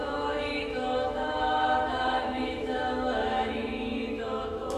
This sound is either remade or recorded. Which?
remade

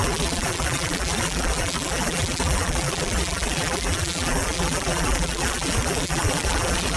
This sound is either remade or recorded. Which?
remade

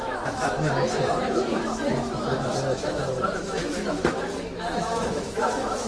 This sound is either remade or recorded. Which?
remade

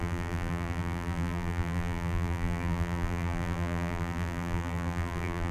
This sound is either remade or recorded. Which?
remade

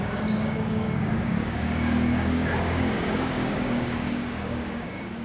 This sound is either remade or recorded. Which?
remade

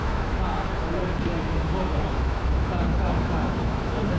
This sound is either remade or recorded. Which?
remade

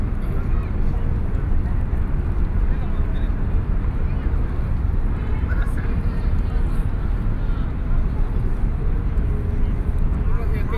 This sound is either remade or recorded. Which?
recorded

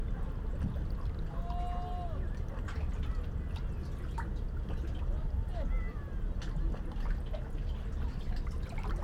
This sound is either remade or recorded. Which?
recorded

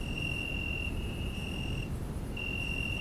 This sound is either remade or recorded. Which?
recorded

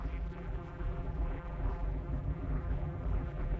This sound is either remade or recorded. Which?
remade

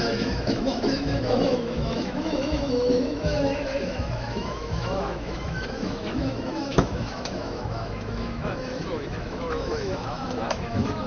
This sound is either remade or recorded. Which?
remade